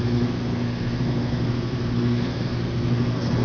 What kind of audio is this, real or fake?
fake